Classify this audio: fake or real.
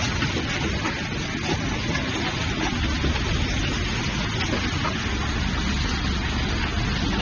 real